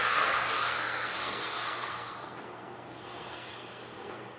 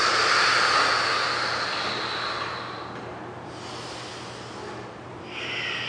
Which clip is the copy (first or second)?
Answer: first